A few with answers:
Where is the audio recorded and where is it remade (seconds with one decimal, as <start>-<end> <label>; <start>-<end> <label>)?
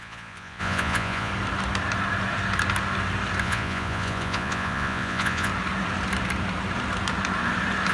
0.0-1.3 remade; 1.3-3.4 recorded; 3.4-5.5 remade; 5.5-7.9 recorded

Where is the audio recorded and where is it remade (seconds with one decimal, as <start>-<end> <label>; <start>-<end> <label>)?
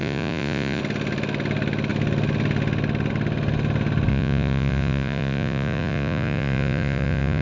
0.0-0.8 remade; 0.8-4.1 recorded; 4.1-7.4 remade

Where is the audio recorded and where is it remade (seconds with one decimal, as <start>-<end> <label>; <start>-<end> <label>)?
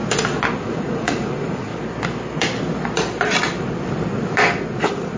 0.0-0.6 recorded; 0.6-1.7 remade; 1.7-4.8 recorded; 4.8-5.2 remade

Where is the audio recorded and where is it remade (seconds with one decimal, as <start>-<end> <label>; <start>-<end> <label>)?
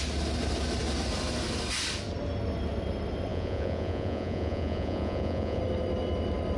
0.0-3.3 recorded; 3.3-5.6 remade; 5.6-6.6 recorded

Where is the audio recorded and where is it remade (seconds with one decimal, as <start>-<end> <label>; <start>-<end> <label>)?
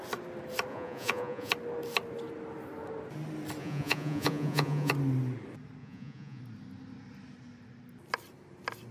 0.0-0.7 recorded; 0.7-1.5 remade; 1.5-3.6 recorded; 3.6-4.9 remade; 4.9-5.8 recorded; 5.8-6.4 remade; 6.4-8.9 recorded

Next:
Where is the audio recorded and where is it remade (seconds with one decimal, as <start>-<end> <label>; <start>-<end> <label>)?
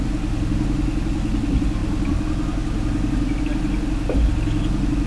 0.0-5.1 recorded